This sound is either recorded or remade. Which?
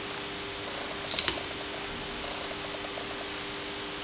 recorded